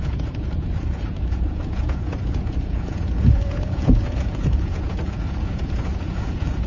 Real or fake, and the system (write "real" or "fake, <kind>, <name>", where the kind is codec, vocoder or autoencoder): fake, vocoder, Vocos